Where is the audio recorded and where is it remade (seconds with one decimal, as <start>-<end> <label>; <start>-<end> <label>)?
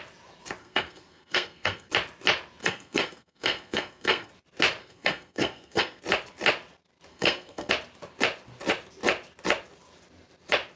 0.0-0.6 recorded; 0.6-1.9 remade; 1.9-2.6 recorded; 2.6-4.3 remade; 4.3-4.8 recorded; 4.8-6.0 remade; 6.0-7.1 recorded; 7.1-7.7 remade; 7.7-10.8 recorded